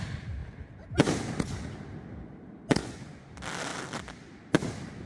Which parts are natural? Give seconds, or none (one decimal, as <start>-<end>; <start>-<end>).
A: 0.0-2.8; 3.3-5.1